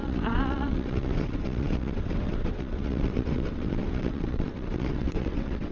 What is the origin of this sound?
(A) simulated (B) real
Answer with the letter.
A